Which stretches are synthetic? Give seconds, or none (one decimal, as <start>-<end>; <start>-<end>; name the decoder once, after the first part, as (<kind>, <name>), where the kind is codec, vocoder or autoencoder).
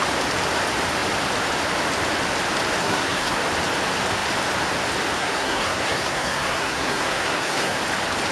2.8-3.4 (codec, SNAC); 5.2-7.8